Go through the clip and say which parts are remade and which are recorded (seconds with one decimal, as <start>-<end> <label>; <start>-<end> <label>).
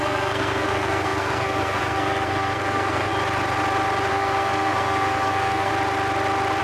0.0-3.1 remade; 3.1-4.1 recorded; 4.1-5.7 remade; 5.7-6.6 recorded